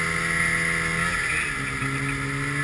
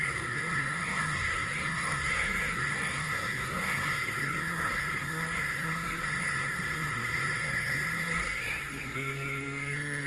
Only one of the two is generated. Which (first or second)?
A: second